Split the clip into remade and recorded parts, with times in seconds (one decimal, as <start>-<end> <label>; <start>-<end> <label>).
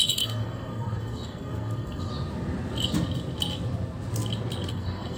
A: 0.0-2.1 remade; 2.1-4.7 recorded; 4.7-5.2 remade